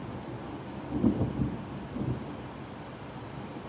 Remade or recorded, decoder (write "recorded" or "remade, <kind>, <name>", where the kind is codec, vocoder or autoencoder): recorded